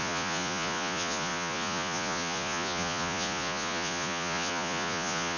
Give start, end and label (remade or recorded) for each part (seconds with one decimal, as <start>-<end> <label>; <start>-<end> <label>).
0.0-5.4 remade